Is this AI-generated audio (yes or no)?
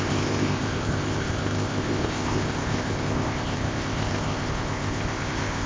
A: yes